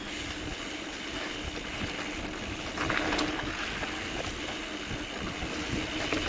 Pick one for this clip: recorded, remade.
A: recorded